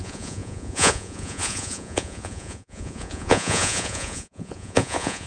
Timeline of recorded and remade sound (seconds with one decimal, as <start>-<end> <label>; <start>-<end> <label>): 0.0-5.3 remade